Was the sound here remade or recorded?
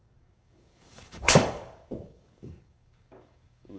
remade